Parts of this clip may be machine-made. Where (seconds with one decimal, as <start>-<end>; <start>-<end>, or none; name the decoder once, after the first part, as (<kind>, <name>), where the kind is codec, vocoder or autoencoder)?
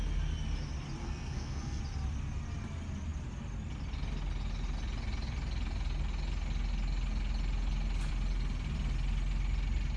1.0-1.8 (codec, SNAC)